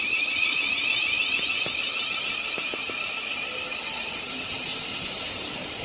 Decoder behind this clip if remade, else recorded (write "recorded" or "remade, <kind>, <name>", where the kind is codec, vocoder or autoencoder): recorded